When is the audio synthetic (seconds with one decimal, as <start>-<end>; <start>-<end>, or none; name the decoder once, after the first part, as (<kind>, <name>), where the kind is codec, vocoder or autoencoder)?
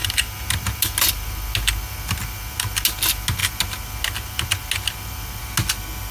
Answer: none